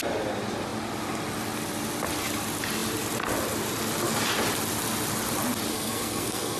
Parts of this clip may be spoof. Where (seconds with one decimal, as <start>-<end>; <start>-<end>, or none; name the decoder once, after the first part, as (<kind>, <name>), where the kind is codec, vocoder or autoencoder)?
5.7-6.6 (codec, SNAC)